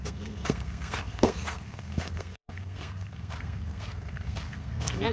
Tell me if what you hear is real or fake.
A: fake